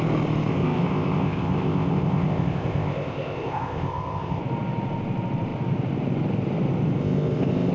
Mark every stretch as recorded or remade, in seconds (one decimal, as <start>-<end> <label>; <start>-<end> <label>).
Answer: 0.0-0.5 recorded; 0.5-4.4 remade; 4.4-7.0 recorded; 7.0-7.7 remade